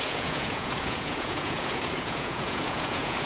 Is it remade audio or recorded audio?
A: remade